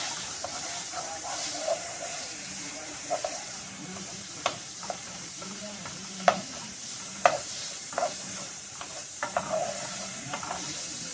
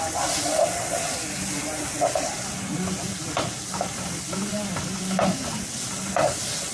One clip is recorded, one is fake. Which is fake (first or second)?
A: first